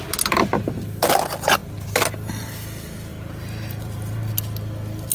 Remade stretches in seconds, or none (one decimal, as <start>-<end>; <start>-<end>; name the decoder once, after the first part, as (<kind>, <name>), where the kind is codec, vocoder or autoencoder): 3.1-4.3 (vocoder, BigVGAN v2)